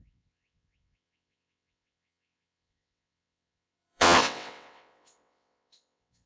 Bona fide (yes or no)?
no